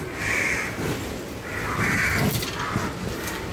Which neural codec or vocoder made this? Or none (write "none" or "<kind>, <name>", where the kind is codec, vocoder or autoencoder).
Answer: none